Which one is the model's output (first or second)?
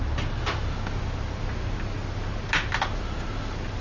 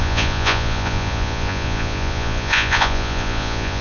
second